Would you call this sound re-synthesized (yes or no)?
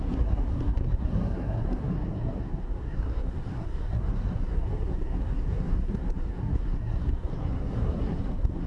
yes